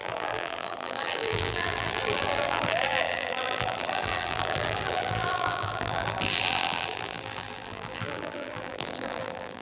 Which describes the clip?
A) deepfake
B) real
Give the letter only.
A